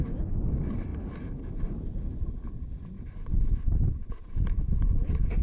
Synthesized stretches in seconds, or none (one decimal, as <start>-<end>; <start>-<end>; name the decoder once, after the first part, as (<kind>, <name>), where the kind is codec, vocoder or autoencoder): none